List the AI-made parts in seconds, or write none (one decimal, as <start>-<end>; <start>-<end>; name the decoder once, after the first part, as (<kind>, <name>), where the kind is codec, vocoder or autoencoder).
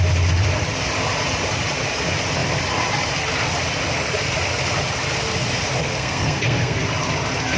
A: 5.8-6.8 (codec, SNAC)